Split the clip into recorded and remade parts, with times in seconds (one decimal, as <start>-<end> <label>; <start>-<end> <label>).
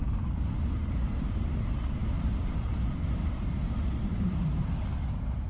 0.0-2.0 recorded; 2.0-3.4 remade; 3.4-4.1 recorded; 4.1-4.7 remade; 4.7-5.5 recorded